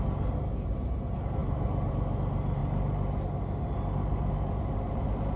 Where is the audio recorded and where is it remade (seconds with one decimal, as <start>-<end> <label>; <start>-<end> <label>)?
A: 0.0-5.4 recorded

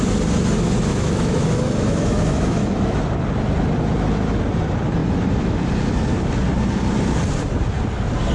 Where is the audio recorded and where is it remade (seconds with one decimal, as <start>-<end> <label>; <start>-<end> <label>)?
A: 0.0-0.9 recorded; 0.9-3.0 remade; 3.0-8.3 recorded

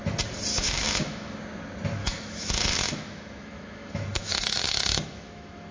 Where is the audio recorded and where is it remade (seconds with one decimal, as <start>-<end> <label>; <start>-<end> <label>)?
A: 0.0-0.5 recorded; 0.5-1.4 remade; 1.4-2.0 recorded; 2.0-5.7 remade

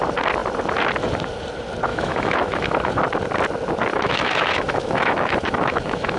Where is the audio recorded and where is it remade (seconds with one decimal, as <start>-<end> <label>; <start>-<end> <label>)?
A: 0.0-1.9 recorded; 1.9-2.9 remade; 2.9-3.9 recorded; 3.9-6.2 remade

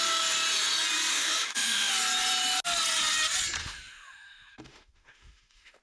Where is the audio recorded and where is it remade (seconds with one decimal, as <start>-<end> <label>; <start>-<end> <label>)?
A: 0.0-1.1 recorded; 1.1-1.9 remade; 1.9-3.6 recorded; 3.6-5.8 remade

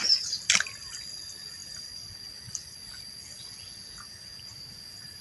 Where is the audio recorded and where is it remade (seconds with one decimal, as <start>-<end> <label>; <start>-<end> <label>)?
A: 0.0-5.2 recorded